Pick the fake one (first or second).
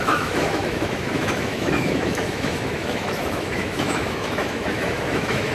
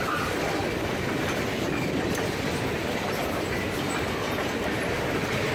first